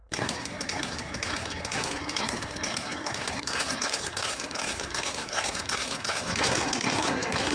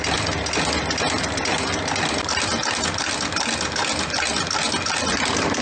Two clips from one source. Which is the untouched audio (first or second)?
second